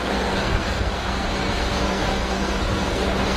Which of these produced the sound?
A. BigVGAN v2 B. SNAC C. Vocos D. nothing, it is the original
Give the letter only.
B